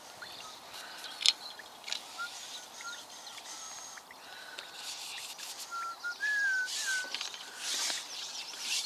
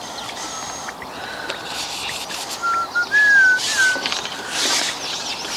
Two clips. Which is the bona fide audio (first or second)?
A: second